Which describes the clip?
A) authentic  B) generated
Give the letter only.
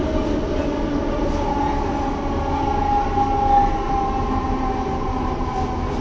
A